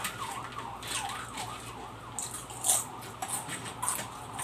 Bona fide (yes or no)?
yes